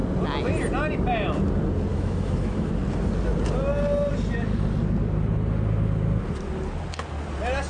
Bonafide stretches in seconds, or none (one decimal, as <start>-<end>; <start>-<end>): 0.0-1.9; 2.7-7.7